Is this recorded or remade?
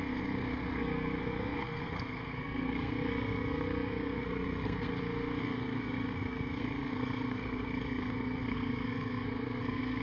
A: remade